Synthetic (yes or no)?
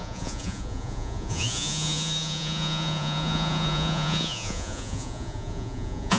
yes